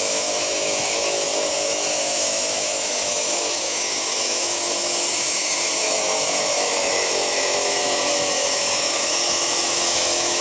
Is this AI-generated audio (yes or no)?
yes